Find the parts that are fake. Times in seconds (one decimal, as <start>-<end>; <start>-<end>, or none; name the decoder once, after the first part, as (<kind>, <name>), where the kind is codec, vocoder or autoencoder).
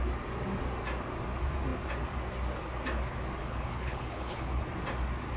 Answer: 3.4-4.6 (codec, HILCodec)